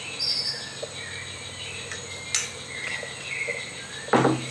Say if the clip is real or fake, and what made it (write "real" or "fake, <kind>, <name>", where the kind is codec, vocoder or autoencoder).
real